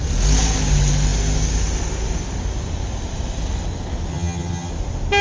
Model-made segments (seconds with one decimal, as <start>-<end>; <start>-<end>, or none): 4.1-4.7